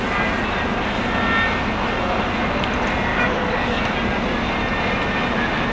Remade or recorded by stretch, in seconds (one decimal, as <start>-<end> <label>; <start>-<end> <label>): 0.0-3.1 recorded; 3.1-3.8 remade; 3.8-5.7 recorded